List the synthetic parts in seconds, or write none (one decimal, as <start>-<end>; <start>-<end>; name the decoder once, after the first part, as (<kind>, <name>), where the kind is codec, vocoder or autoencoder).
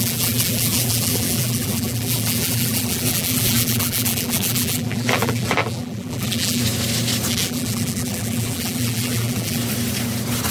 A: 0.0-6.6 (vocoder, BigVGAN v2); 7.3-9.6